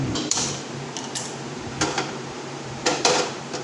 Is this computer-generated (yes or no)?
yes